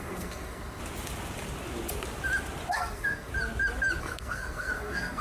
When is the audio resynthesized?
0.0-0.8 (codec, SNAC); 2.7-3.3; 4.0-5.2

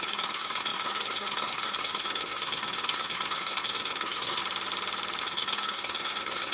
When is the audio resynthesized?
0.0-4.4 (codec, SNAC); 5.2-6.5